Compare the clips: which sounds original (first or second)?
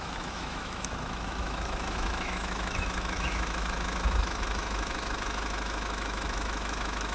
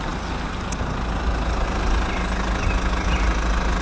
second